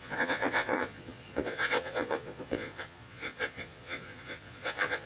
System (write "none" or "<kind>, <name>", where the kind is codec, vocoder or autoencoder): vocoder, Vocos